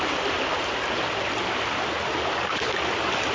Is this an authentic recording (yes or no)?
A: yes